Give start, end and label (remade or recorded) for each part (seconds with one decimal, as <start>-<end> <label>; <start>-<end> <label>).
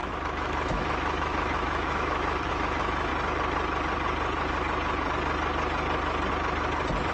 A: 0.0-3.1 remade; 3.1-7.1 recorded